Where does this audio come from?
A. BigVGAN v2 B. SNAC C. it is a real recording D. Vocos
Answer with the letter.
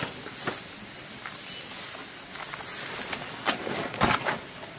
C